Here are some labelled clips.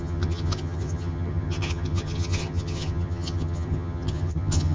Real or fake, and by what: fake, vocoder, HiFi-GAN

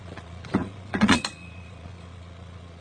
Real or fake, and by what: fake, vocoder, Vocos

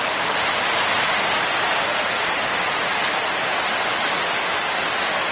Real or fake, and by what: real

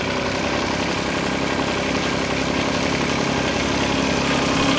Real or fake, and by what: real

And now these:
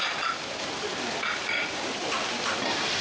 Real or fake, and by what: fake, vocoder, BigVGAN v2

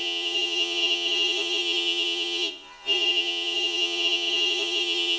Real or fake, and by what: fake, vocoder, Vocos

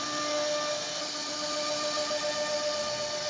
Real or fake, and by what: real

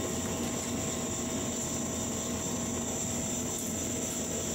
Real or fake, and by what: real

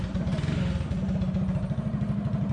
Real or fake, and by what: real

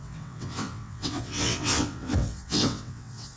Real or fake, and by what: fake, vocoder, WaveNeXt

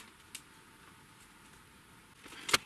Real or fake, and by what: real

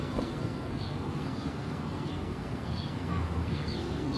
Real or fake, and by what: fake, codec, SNAC